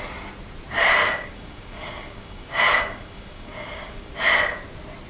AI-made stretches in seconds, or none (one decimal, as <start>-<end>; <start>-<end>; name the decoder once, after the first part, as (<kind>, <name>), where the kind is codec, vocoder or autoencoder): 1.0-4.1 (codec, DAC)